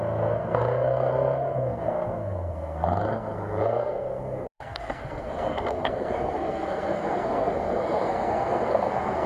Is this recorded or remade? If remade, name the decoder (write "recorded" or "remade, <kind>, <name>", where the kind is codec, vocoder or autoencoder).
remade, codec, SNAC